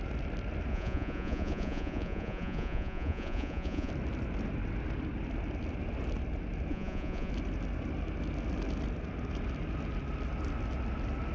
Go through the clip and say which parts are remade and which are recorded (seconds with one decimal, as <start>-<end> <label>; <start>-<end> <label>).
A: 0.0-0.7 recorded; 0.7-3.9 remade; 3.9-6.7 recorded; 6.7-7.3 remade; 7.3-11.3 recorded